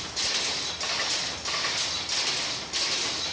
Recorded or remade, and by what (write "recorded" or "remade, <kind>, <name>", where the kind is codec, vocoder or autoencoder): recorded